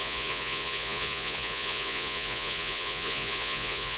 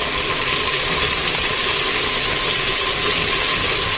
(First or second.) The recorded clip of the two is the second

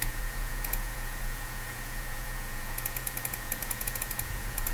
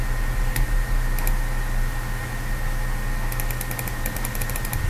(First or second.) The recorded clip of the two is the second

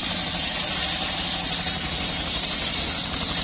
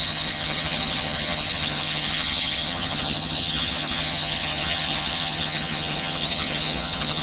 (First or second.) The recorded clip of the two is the first